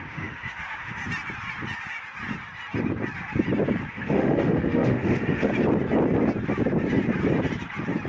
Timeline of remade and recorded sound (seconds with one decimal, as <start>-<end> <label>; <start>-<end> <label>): 0.0-1.0 remade; 1.0-3.9 recorded; 3.9-5.5 remade; 5.5-8.1 recorded